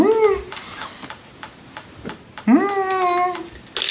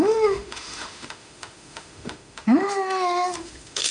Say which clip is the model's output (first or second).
second